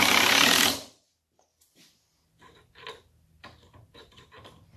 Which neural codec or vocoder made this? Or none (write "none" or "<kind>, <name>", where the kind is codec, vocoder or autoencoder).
none